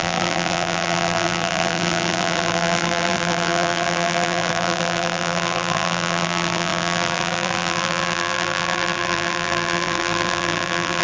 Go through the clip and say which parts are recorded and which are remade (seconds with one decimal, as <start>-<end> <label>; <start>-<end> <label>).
0.0-11.0 remade